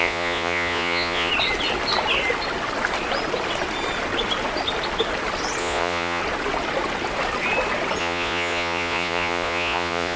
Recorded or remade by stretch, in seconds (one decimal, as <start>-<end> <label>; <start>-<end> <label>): 0.0-1.3 remade; 1.3-5.6 recorded; 5.6-6.2 remade; 6.2-8.0 recorded; 8.0-10.2 remade